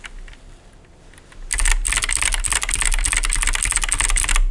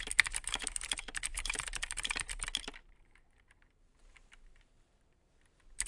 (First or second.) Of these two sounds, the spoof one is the second